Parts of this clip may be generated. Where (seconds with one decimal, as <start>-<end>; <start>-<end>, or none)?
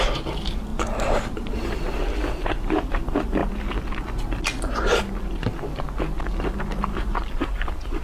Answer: 0.7-1.9; 2.4-3.0; 7.1-8.0